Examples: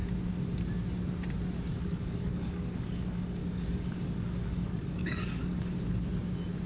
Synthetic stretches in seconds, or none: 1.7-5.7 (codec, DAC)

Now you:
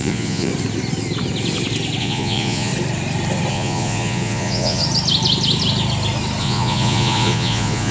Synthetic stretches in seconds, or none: 0.0-0.5 (vocoder, Vocos); 2.0-2.7; 3.5-4.8; 6.4-7.9

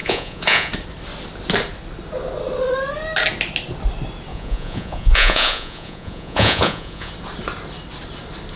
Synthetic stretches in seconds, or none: 0.0-0.7 (vocoder, Vocos); 4.3-7.1

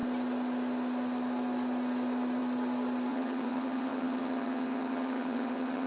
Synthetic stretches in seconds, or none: 3.1-5.9 (vocoder, HiFi-GAN)

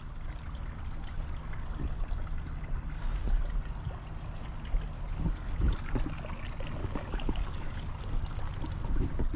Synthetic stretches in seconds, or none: 6.8-8.0 (codec, DAC)

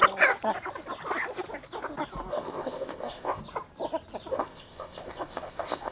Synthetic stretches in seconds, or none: 2.3-3.4 (codec, ZipCodec); 4.3-5.9